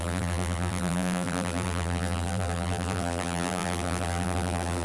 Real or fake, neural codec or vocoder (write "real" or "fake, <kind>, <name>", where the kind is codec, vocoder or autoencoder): fake, vocoder, BigVGAN v2